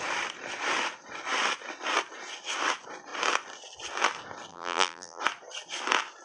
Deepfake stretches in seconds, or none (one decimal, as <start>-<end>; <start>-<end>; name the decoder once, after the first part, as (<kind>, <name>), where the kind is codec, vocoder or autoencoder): 4.5-5.2 (vocoder, BigVGAN v2)